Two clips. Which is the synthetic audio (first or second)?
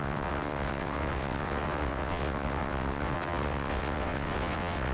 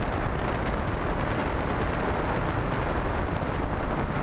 first